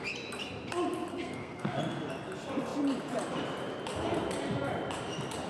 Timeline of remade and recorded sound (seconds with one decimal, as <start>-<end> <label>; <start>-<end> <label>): 0.0-1.1 recorded; 1.1-1.8 remade; 1.8-5.5 recorded